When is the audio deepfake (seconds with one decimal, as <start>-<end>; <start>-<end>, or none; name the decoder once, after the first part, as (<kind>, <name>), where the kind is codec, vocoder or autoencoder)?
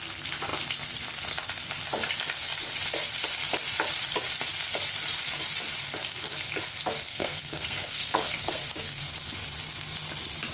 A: 7.1-9.1 (codec, SNAC)